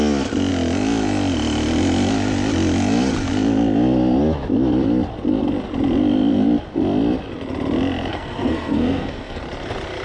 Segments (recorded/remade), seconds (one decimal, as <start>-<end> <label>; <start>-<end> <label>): 0.0-8.1 recorded; 8.1-9.4 remade; 9.4-10.0 recorded